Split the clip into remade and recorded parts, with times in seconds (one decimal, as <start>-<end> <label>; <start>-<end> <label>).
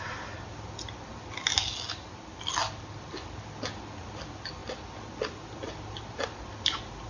0.0-7.1 recorded